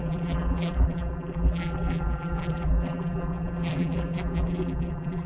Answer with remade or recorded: remade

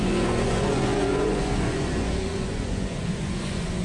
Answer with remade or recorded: remade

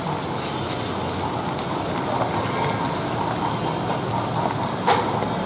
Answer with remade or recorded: recorded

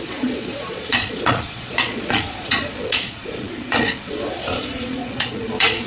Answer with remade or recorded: remade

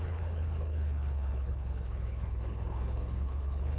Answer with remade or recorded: remade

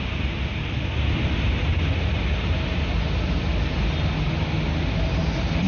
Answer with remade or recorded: recorded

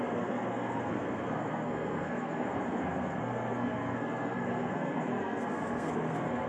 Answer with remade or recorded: remade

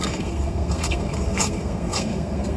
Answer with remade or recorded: remade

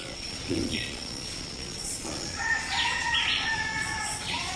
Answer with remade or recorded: remade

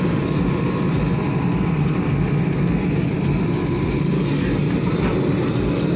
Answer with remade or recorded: recorded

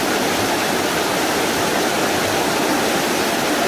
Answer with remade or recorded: recorded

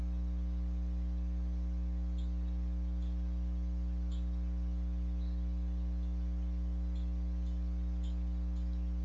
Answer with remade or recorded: recorded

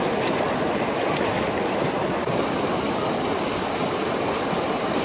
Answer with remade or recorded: recorded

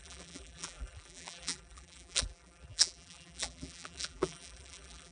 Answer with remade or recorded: remade